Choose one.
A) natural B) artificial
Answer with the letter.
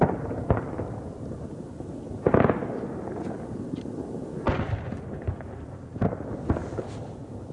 A